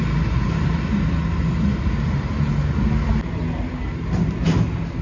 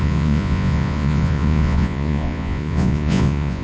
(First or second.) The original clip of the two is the first